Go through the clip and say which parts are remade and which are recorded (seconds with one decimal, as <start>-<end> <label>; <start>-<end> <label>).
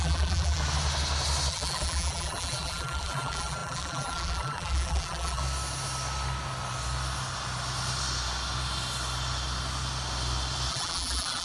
0.0-0.6 remade; 0.6-1.5 recorded; 1.5-5.4 remade; 5.4-10.7 recorded; 10.7-11.4 remade